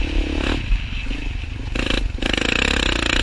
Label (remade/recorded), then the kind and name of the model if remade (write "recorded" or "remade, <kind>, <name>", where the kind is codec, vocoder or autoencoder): recorded